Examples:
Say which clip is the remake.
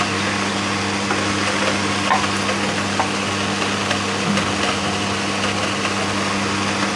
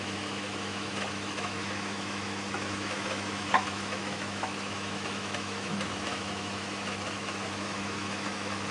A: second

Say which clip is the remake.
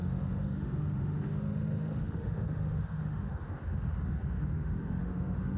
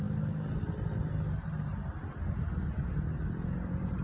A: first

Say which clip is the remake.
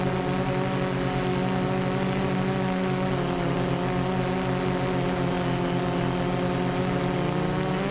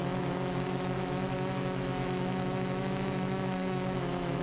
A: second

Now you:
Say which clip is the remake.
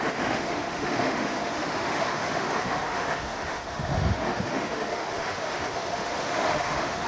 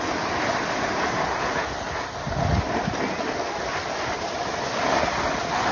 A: first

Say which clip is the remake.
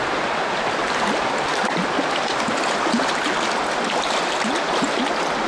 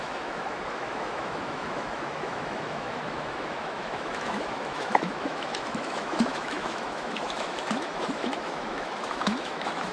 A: second